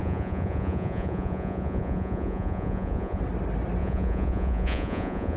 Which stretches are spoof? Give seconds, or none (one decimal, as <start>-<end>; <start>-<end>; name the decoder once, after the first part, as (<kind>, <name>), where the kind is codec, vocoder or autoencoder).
0.0-3.2 (vocoder, Vocos); 3.8-5.4